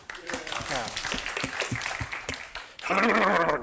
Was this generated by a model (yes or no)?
no